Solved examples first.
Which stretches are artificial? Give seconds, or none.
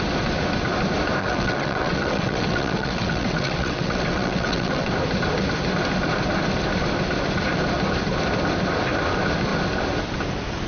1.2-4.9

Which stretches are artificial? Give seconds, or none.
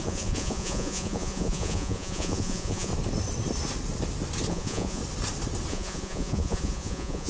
0.0-2.9; 4.5-5.0; 5.7-7.3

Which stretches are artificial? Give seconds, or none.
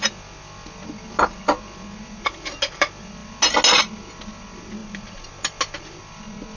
none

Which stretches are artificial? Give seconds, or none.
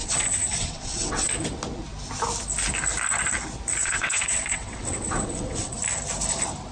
0.0-1.3; 3.8-5.8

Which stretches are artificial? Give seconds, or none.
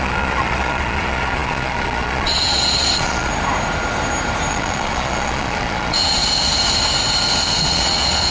0.0-3.3; 4.5-6.2; 7.6-8.3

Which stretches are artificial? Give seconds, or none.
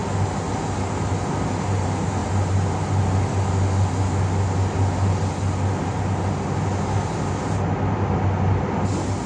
none